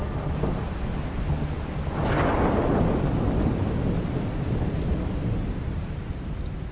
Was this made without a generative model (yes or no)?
yes